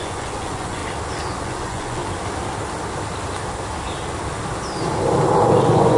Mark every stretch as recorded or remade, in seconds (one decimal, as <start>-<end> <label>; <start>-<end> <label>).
0.0-0.8 remade; 0.8-1.4 recorded; 1.4-2.0 remade; 2.0-5.6 recorded; 5.6-6.0 remade